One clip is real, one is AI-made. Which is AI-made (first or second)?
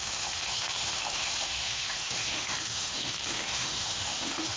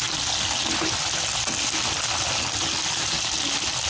first